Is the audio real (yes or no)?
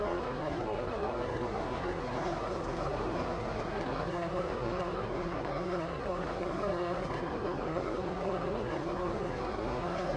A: no